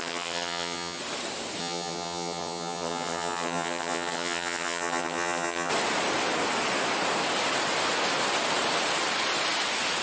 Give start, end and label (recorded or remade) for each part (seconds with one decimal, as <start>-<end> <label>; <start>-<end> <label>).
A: 0.0-1.0 remade; 1.0-1.6 recorded; 1.6-5.7 remade; 5.7-10.0 recorded